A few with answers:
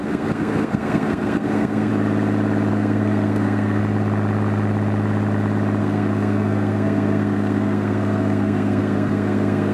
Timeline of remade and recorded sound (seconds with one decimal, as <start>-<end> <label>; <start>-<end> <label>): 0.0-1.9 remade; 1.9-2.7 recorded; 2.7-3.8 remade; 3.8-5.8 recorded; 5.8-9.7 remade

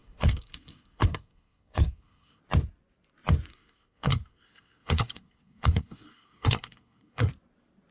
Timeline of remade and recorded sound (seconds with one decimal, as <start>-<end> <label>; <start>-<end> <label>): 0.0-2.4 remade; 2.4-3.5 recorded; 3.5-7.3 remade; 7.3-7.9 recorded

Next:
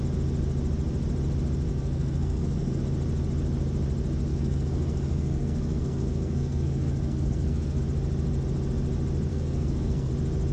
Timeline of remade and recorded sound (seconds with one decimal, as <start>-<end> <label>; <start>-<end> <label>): 0.0-1.7 recorded; 1.7-2.8 remade; 2.8-4.3 recorded; 4.3-7.8 remade; 7.8-9.3 recorded; 9.3-10.1 remade; 10.1-10.5 recorded

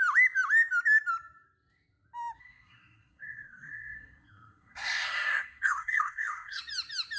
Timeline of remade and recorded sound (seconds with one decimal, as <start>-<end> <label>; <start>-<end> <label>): 0.0-2.4 recorded; 2.4-6.6 remade; 6.6-7.2 recorded

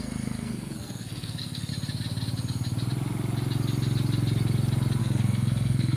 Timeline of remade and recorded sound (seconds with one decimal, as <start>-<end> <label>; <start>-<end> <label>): 0.0-1.7 remade; 1.7-5.0 recorded; 5.0-6.0 remade

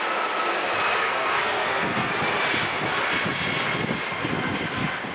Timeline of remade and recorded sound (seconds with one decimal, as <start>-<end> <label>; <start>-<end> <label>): 0.0-1.0 recorded; 1.0-2.1 remade; 2.1-5.1 recorded

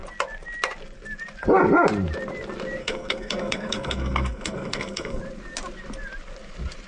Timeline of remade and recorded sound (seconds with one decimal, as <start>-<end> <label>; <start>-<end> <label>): 0.0-2.8 recorded; 2.8-5.2 remade; 5.2-6.9 recorded

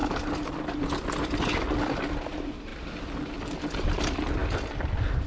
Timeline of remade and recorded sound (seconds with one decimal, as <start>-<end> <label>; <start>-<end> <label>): 0.0-5.3 recorded